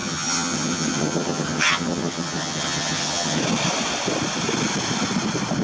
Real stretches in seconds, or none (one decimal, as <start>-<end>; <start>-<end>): 3.4-5.6